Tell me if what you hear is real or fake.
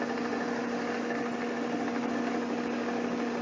real